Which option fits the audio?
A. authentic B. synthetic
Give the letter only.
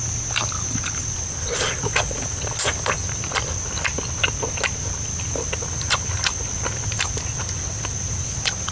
A